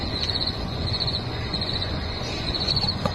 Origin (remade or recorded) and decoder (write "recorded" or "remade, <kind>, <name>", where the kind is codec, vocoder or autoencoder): remade, vocoder, Vocos